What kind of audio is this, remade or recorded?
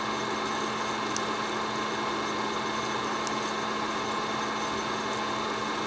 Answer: recorded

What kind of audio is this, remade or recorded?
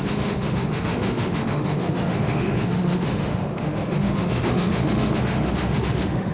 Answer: remade